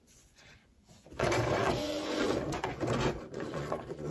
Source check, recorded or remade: remade